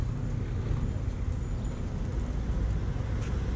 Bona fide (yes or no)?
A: yes